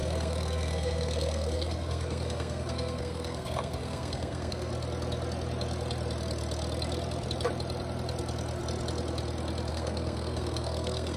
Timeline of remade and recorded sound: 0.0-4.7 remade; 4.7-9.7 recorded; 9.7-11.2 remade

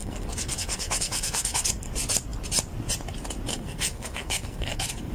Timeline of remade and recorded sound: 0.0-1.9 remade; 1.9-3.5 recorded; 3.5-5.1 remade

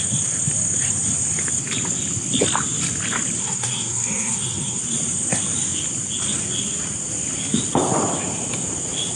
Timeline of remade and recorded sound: 0.0-3.4 recorded; 3.4-4.8 remade; 4.8-9.2 recorded

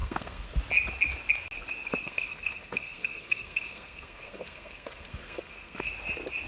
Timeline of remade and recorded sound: 0.0-0.6 remade; 0.6-2.0 recorded; 2.0-5.9 remade; 5.9-6.5 recorded